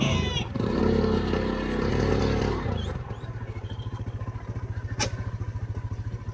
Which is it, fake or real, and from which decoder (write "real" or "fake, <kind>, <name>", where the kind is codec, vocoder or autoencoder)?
real